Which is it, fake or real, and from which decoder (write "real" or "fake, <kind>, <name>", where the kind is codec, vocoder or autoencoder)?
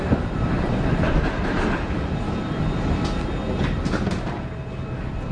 real